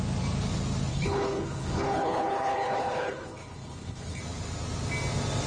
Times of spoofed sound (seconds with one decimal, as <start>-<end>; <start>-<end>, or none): 0.9-4.2